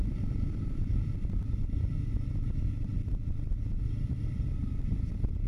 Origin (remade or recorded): recorded